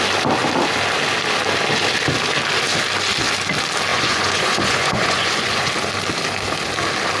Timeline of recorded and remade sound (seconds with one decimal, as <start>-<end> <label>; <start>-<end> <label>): 0.0-3.9 recorded; 3.9-5.7 remade; 5.7-7.2 recorded